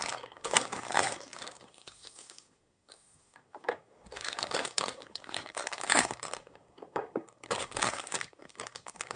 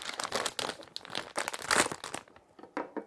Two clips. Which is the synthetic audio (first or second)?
first